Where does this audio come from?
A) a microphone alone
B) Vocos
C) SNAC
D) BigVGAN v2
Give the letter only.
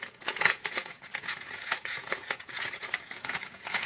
B